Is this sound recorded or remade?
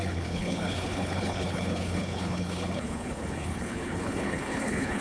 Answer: remade